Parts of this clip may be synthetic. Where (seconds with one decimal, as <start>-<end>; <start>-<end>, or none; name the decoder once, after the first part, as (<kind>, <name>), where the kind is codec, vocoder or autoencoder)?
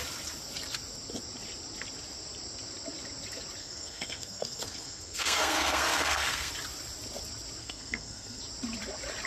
3.6-6.5 (codec, SNAC); 7.6-8.4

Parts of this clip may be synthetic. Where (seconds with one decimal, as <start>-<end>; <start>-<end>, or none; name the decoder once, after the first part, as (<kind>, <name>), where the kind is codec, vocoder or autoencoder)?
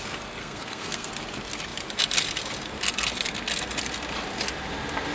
0.4-1.1 (codec, SNAC)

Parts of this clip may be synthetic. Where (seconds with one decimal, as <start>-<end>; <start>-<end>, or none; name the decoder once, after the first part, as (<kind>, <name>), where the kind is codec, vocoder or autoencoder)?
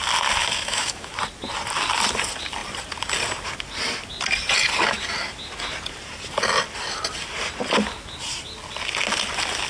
0.4-1.1 (autoencoder, DAC-VAE)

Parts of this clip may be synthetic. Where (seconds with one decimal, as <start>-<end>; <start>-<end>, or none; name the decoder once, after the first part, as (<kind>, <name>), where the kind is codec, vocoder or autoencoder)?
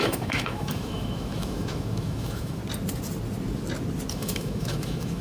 0.0-2.6 (autoencoder, DAC-VAE); 4.1-5.2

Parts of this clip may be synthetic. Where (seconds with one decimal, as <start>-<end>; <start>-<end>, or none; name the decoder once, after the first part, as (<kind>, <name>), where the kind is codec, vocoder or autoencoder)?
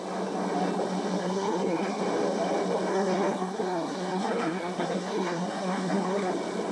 1.2-2.0 (codec, SNAC); 2.9-6.3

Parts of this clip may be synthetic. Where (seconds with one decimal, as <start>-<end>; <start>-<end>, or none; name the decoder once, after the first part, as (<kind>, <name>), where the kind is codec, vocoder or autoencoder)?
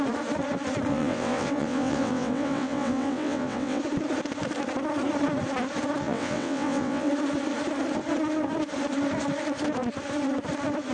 0.9-3.8 (vocoder, WaveNeXt); 6.0-7.1